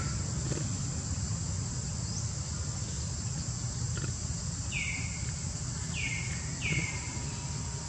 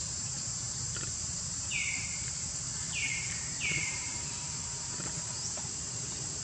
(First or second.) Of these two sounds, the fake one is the second